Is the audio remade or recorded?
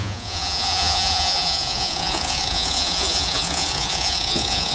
remade